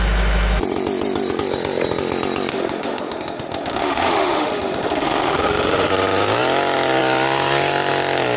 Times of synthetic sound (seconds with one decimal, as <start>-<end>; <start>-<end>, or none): 2.5-5.9